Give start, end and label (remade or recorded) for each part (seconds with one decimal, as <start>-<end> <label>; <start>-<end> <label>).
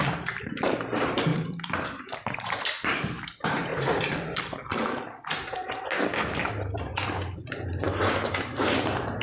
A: 0.0-3.7 remade; 3.7-6.8 recorded; 6.8-9.2 remade